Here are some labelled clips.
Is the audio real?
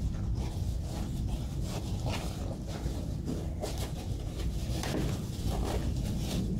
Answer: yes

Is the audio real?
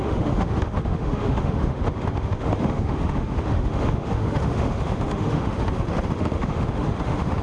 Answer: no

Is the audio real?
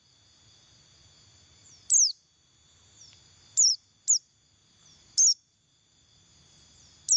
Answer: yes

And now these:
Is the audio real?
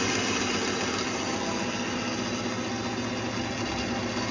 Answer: yes